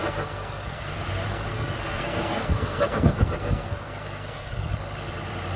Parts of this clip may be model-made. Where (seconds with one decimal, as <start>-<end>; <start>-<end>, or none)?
0.0-0.9; 1.3-4.7